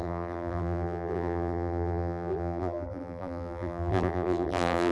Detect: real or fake fake